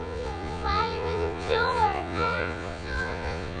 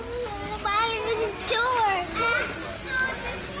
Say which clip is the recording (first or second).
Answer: second